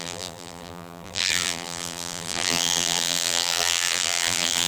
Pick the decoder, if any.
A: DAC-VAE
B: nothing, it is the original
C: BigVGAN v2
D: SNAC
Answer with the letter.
C